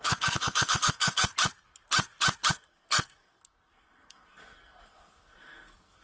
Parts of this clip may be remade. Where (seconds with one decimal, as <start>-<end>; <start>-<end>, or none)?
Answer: 0.0-1.3; 2.5-6.0